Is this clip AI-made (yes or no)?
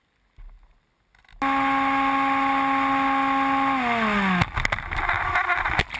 no